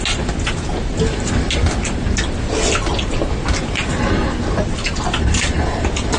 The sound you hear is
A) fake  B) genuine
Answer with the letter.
B